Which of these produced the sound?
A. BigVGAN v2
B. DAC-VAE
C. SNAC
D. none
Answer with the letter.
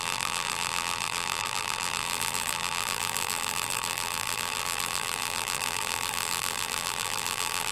A